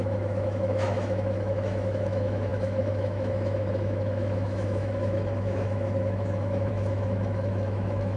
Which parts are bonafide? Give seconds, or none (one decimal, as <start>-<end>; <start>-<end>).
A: none